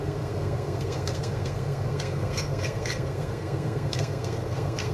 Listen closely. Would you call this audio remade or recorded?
remade